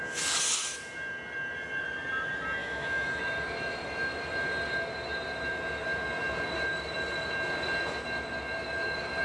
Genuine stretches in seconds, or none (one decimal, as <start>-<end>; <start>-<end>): 0.0-2.6; 3.2-9.2